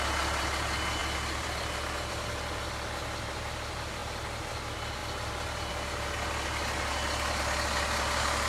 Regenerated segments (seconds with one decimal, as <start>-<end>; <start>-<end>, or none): 1.0-2.6